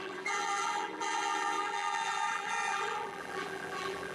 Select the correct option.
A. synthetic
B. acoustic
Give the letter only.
A